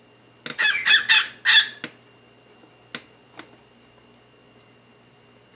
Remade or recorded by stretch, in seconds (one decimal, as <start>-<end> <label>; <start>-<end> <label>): 0.0-0.5 recorded; 0.5-1.1 remade; 1.1-5.5 recorded